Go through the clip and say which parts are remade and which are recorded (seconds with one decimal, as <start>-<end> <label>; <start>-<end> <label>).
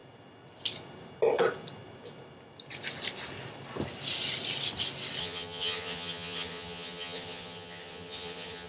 0.0-5.2 recorded; 5.2-8.7 remade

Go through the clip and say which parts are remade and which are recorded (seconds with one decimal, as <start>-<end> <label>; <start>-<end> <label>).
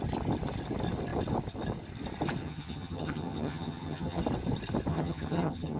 0.0-2.4 recorded; 2.4-4.2 remade; 4.2-4.9 recorded; 4.9-5.8 remade